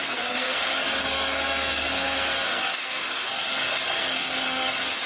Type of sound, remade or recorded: remade